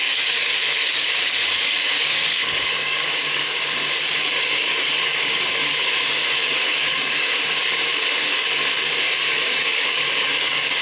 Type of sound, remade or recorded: remade